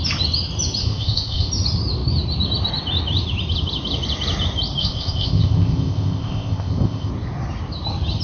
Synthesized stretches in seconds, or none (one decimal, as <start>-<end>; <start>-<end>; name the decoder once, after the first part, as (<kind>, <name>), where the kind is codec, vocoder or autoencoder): 0.8-1.5 (codec, ZipCodec); 4.8-7.1

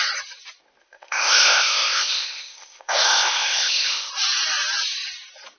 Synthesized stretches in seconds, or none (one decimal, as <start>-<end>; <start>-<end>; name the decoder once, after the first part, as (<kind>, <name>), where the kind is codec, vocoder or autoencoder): 0.8-4.1 (codec, ZipCodec)